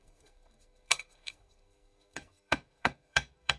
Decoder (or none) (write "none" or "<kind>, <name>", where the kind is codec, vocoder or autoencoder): codec, SNAC